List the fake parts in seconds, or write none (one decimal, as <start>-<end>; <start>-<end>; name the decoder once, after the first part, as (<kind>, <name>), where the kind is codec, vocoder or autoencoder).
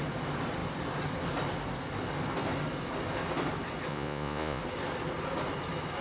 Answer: 3.9-4.6 (vocoder, Vocos)